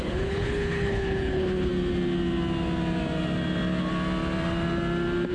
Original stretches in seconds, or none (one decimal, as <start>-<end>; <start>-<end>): 1.7-5.3